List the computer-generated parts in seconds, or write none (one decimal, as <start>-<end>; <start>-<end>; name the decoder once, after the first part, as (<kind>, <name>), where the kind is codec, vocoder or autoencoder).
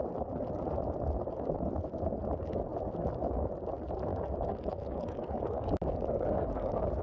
4.1-7.0 (codec, DAC)